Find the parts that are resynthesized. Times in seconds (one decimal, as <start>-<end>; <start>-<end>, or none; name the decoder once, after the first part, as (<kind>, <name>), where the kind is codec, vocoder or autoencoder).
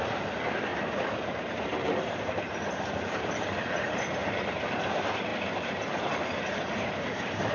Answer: 0.0-7.5 (vocoder, BigVGAN v2)